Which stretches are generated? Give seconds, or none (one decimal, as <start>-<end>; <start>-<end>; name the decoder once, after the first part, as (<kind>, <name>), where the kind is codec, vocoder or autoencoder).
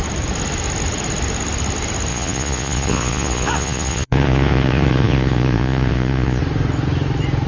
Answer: 2.1-6.4 (vocoder, Vocos)